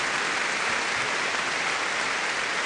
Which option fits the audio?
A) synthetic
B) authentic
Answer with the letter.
B